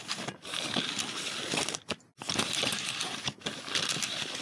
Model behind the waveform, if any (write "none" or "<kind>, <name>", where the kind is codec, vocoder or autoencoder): none